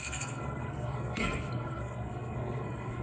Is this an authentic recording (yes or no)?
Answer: no